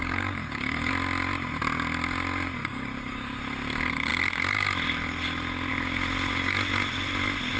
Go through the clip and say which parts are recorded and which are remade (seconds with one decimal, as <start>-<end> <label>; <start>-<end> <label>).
0.0-0.9 remade; 0.9-2.6 recorded; 2.6-3.4 remade; 3.4-7.6 recorded